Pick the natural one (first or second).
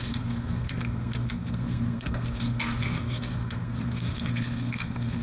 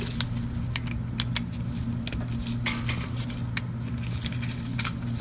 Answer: second